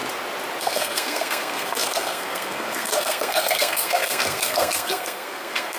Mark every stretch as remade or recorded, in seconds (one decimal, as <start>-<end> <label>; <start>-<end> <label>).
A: 0.0-0.6 recorded; 0.6-5.8 remade